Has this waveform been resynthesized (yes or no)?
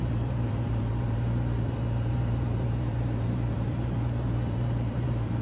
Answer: yes